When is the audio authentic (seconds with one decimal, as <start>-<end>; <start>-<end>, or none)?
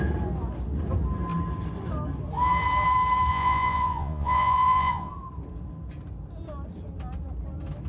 0.0-3.3; 5.1-7.9